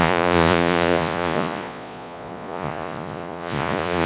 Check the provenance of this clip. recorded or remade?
remade